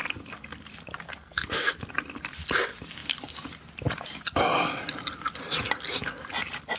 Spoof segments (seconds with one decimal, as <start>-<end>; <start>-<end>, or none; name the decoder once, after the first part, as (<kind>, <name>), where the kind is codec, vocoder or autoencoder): 1.1-1.8 (codec, SNAC)